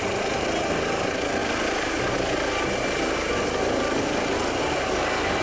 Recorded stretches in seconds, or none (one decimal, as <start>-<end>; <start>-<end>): 0.0-5.4